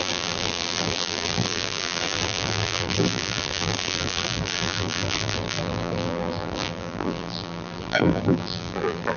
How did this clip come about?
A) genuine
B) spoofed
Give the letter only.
B